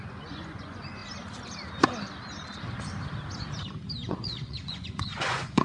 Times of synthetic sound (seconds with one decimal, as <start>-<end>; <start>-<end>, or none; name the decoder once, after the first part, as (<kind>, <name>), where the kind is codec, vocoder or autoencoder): 0.0-1.0 (vocoder, Vocos); 4.1-5.6